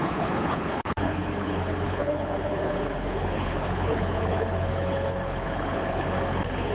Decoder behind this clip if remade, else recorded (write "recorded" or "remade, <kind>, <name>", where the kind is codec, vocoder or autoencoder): remade, codec, HILCodec